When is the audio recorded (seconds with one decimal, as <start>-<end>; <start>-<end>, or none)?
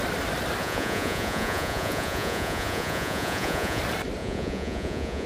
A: 0.0-0.6; 3.8-4.2